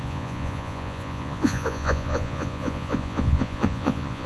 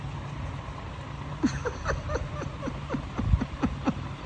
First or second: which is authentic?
second